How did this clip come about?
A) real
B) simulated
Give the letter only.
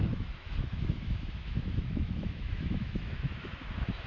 B